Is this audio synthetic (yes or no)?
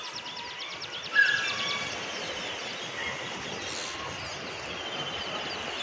no